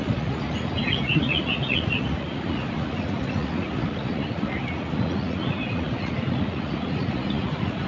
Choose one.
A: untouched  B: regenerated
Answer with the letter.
B